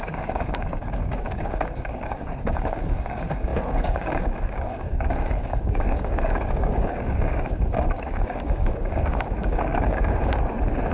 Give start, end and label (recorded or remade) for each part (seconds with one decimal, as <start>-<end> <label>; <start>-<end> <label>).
0.0-10.3 remade; 10.3-10.9 recorded